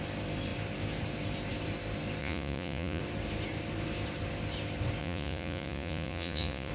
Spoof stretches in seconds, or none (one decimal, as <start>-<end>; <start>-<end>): 2.2-3.0; 5.0-6.7